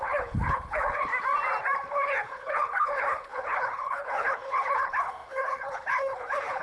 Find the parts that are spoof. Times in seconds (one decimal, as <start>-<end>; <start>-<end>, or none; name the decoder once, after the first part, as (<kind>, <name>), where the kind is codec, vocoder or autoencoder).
0.0-1.1 (codec, HILCodec); 1.9-6.6